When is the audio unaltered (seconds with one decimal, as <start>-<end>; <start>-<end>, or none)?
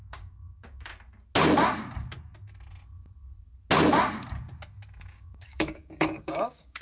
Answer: 0.9-5.0